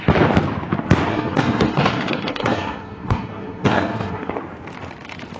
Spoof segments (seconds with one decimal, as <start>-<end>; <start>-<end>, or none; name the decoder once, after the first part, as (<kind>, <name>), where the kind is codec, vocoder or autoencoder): 1.1-4.3 (codec, SNAC)